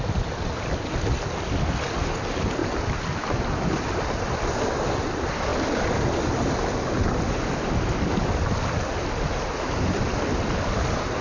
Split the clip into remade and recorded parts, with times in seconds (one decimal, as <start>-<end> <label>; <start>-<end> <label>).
0.0-11.2 recorded